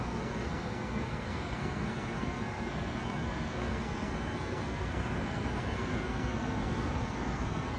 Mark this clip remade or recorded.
remade